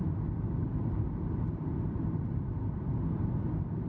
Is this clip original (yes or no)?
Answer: yes